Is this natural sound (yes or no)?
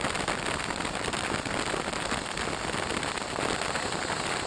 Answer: yes